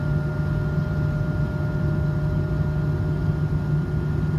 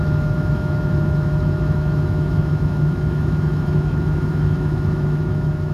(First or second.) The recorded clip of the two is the first